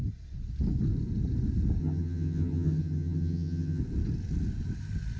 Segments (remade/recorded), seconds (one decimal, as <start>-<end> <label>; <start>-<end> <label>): 0.0-1.8 recorded; 1.8-3.8 remade; 3.8-5.2 recorded